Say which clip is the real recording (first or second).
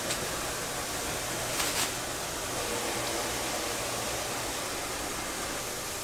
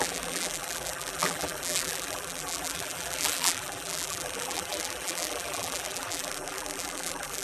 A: first